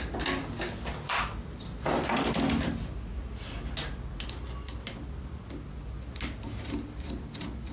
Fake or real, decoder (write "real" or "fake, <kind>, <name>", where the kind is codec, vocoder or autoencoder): real